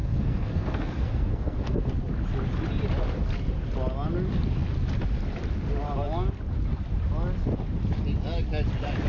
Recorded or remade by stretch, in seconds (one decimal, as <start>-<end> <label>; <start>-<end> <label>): 0.0-1.9 remade; 1.9-9.1 recorded